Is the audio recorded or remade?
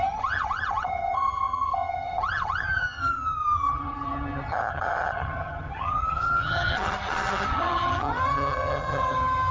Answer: remade